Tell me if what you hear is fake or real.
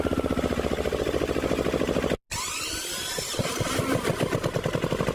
real